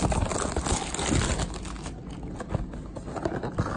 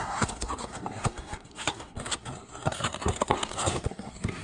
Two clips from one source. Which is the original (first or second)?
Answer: first